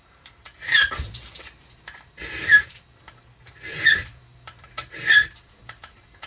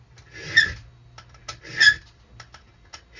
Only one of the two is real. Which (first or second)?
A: second